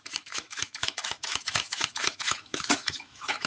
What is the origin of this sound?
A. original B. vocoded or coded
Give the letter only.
B